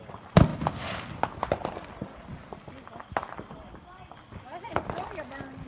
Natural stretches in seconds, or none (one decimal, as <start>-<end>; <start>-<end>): 0.0-0.5; 1.7-5.7